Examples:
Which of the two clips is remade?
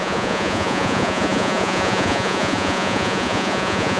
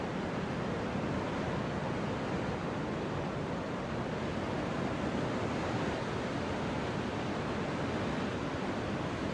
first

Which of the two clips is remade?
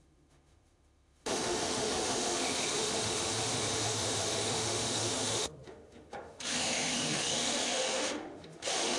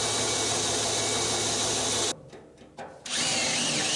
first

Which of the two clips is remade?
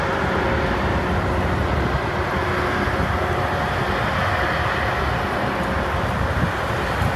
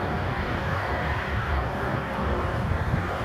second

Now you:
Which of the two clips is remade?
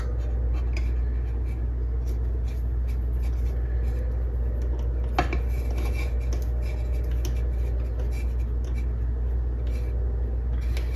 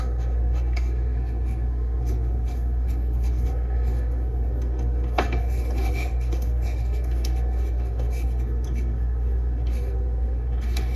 second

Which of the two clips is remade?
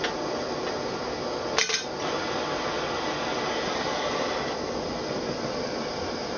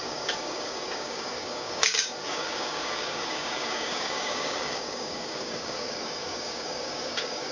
second